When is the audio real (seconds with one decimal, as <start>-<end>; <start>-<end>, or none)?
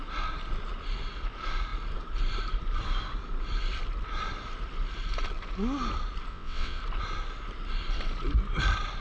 0.0-6.3; 6.8-9.0